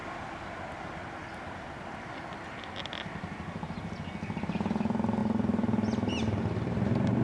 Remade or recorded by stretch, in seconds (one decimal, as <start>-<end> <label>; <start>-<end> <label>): 0.0-7.2 recorded